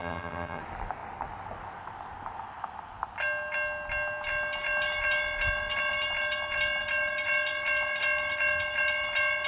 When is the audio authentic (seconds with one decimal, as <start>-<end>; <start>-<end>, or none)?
0.6-9.5